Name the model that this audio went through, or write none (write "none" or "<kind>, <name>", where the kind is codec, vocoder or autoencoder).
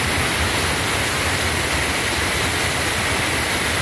none